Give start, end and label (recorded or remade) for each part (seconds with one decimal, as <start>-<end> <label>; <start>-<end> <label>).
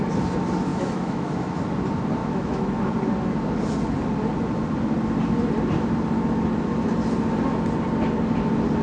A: 0.0-0.7 recorded; 0.7-1.6 remade; 1.6-2.2 recorded; 2.2-2.9 remade; 2.9-8.8 recorded